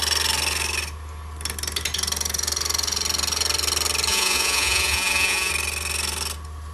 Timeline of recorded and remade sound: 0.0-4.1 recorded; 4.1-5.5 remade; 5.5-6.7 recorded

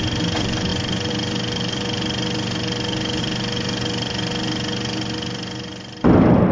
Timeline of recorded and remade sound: 0.0-6.5 recorded

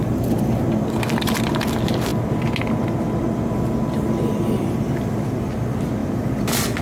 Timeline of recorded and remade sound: 0.0-6.8 recorded

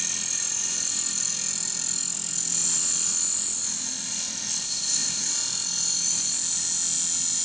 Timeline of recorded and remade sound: 0.0-4.6 recorded; 4.6-5.2 remade; 5.2-7.4 recorded